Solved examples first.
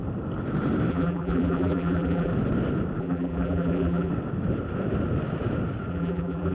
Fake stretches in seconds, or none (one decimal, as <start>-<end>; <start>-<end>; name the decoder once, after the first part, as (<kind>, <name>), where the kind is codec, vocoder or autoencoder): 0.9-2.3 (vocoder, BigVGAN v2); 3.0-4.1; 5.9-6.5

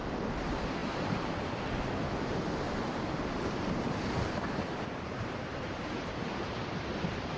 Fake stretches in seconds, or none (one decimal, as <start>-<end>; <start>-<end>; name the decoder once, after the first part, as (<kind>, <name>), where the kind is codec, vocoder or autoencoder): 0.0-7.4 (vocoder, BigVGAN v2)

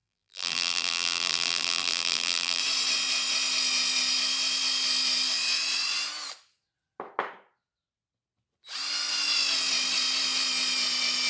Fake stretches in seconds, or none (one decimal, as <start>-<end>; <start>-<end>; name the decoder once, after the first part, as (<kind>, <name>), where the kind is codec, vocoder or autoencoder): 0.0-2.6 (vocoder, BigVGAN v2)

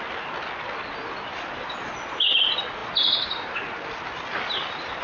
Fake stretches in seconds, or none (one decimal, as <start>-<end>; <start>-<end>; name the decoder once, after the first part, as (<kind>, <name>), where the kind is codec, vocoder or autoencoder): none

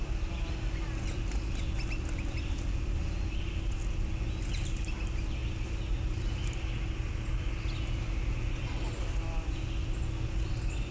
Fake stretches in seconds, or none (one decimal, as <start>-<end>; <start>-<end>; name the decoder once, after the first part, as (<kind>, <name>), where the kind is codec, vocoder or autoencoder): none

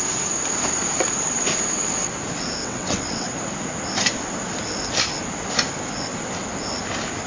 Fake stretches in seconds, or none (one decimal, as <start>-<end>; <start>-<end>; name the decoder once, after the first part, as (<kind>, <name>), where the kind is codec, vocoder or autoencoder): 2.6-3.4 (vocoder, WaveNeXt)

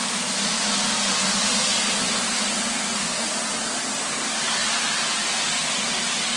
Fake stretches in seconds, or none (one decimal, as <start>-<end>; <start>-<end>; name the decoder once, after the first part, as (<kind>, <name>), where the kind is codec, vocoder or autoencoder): 2.8-3.3 (codec, SNAC)